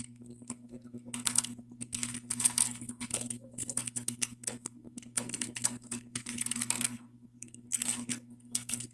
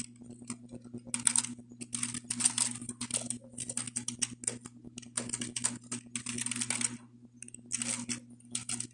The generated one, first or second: first